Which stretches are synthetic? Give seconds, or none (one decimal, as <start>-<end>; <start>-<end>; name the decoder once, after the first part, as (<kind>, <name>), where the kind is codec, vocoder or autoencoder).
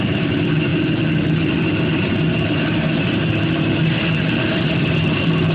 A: 0.0-0.7 (vocoder, BigVGAN v2); 4.0-5.5